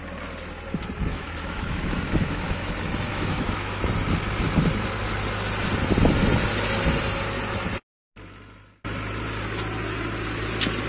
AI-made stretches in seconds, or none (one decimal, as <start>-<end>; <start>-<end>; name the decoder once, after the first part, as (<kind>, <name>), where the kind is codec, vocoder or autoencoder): 1.1-2.7 (autoencoder, DAC-VAE); 3.1-3.8